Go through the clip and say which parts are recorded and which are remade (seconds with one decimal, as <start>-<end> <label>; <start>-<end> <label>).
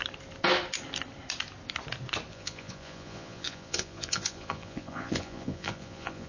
0.0-2.3 recorded; 2.3-6.3 remade